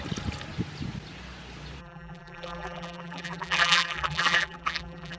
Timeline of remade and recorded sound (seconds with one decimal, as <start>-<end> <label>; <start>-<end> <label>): 0.0-1.8 recorded; 1.8-5.2 remade